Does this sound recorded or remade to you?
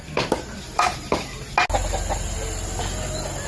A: recorded